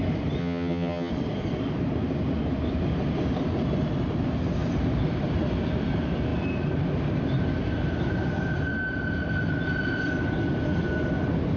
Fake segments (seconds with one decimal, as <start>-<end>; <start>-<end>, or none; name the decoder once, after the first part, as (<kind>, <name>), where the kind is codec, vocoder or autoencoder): 0.4-1.1 (vocoder, HiFi-GAN)

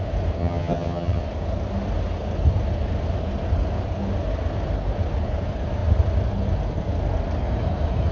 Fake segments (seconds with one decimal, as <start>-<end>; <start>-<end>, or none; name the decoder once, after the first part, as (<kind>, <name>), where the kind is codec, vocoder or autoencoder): 0.4-1.2 (vocoder, HiFi-GAN)

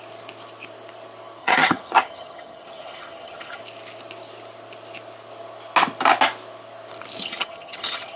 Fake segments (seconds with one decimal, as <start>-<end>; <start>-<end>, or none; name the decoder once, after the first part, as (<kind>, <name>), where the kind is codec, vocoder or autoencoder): 1.4-3.6 (vocoder, HiFi-GAN); 7.2-8.2

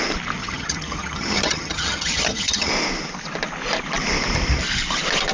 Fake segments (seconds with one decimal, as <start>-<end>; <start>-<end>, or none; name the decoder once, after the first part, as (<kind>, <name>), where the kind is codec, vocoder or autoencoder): 0.4-2.7 (vocoder, HiFi-GAN)